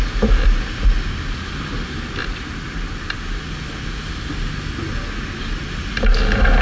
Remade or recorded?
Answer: recorded